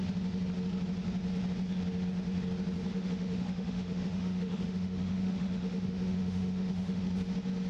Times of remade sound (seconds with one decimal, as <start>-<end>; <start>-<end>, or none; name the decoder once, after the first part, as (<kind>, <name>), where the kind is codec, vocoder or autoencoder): 2.9-7.0 (autoencoder, DAC-VAE)

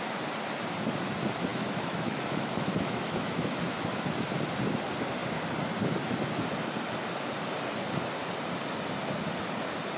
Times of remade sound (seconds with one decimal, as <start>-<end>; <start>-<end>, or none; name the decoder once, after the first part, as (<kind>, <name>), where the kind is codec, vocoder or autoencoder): 1.5-3.6 (autoencoder, DAC-VAE)